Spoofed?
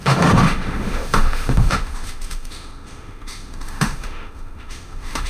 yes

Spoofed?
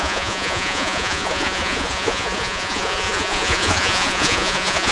yes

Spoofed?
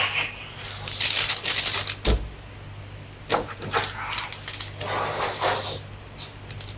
no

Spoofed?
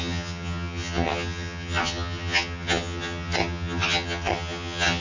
yes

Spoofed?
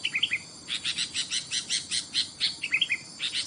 no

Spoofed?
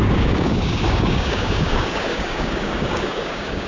yes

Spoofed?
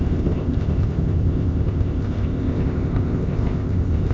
yes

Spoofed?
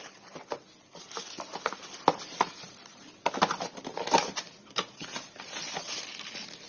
no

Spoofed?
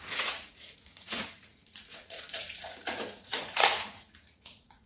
yes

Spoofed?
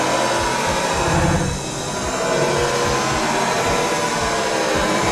no